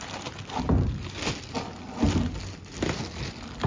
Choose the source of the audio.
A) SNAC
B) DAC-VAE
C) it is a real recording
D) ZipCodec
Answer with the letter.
C